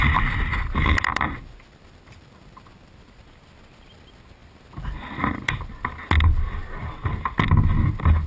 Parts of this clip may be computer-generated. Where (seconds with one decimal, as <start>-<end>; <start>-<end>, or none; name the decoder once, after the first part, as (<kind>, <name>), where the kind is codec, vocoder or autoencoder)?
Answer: 0.0-3.2 (vocoder, BigVGAN v2)